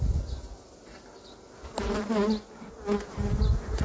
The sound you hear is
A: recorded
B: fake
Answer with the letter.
A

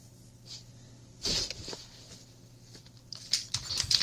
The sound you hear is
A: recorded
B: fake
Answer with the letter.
A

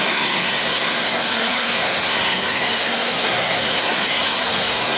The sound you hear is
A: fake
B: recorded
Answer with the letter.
A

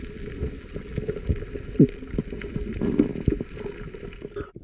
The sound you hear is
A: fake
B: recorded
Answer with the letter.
B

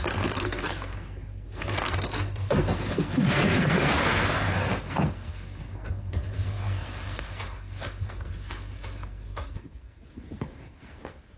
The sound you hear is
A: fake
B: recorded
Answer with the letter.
A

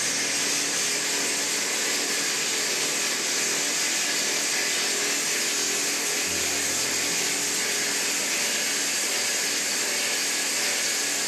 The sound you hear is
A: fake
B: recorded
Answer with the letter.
B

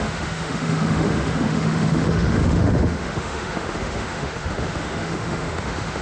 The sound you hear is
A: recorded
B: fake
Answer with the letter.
B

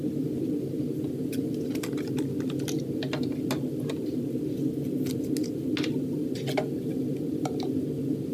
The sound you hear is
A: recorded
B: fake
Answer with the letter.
A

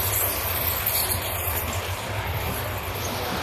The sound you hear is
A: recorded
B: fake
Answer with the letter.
A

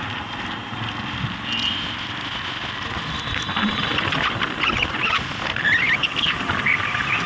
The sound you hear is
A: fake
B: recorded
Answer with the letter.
B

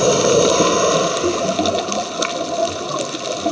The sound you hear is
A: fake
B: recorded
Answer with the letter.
B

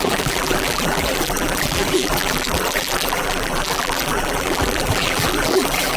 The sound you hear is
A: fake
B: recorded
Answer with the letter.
A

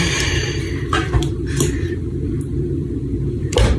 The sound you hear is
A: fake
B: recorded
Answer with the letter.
A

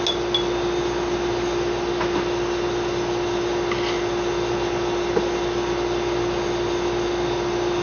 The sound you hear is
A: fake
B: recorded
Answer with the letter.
B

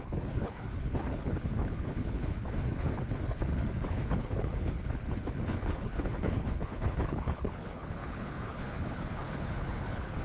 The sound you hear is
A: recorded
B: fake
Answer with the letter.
B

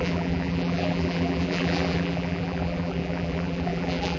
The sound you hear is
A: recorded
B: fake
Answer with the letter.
B